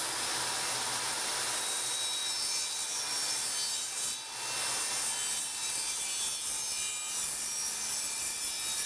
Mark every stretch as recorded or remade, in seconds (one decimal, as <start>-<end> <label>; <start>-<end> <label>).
0.0-8.9 recorded